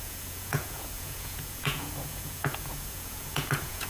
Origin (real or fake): fake